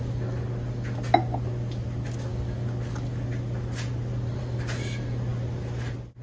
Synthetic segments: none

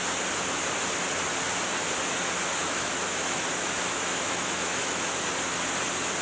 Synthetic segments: 2.6-5.2 (autoencoder, DAC-VAE)